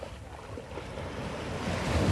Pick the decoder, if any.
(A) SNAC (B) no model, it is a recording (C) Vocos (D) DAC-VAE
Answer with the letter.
B